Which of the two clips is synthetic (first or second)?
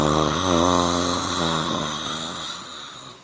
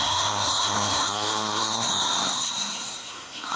second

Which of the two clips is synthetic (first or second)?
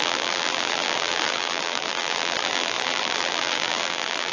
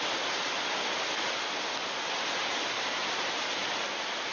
first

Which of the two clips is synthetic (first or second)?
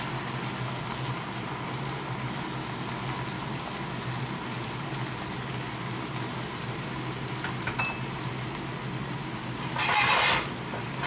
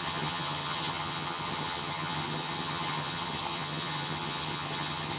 second